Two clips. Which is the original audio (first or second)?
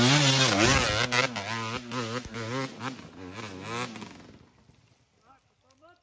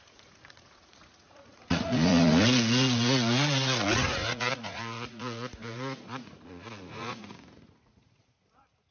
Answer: first